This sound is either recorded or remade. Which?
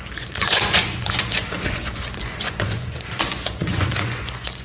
remade